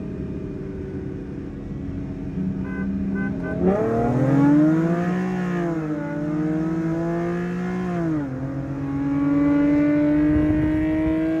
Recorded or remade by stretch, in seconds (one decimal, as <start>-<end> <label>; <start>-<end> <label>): 0.0-1.5 recorded; 1.5-2.0 remade; 2.0-11.4 recorded